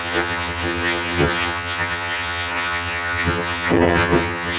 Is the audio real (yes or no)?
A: no